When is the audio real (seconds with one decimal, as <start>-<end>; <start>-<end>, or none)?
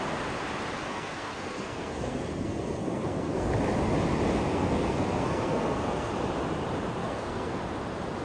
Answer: 0.0-0.9; 3.5-4.5; 6.1-7.0; 7.6-8.2